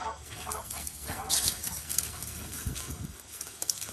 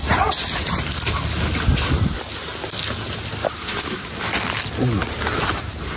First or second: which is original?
second